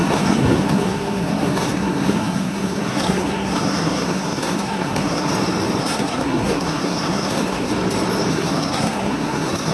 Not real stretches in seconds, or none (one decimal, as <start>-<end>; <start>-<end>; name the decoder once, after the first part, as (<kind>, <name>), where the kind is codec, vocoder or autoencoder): 0.0-5.3 (codec, SNAC); 5.8-7.7; 8.3-9.7